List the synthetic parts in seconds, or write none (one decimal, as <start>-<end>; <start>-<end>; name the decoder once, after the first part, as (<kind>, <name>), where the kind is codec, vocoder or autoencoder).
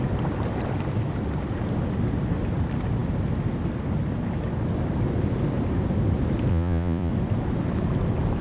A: 6.5-7.1 (vocoder, Vocos)